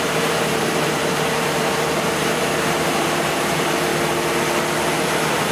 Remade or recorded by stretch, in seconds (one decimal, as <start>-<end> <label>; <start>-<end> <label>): 0.0-3.9 remade; 3.9-4.9 recorded; 4.9-5.5 remade